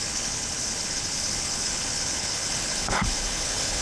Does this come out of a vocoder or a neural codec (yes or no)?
yes